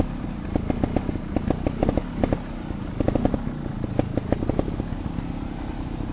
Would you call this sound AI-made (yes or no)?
no